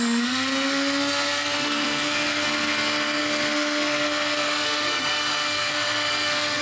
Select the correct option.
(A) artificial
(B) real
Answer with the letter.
A